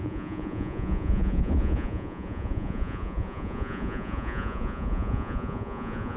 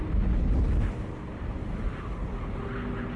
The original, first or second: second